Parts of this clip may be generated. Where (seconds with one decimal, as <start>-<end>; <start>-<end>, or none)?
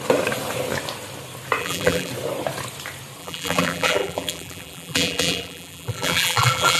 1.6-2.1; 3.2-6.8